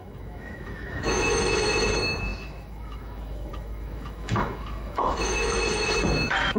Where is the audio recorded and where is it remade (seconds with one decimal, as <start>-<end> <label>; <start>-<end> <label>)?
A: 0.0-6.6 remade